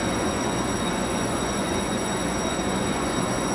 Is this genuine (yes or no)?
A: no